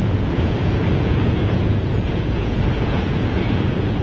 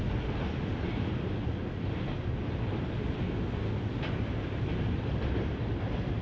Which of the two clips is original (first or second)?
second